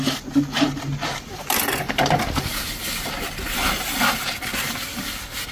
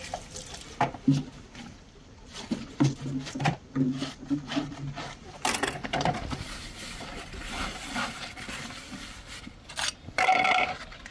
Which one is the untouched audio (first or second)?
first